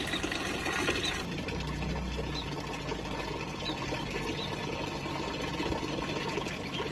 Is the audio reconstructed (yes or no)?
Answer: no